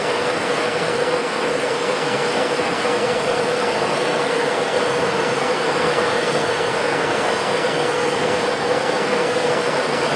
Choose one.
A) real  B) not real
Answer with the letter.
B